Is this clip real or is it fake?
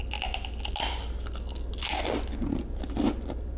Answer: real